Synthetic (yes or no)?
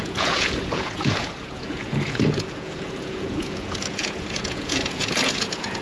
yes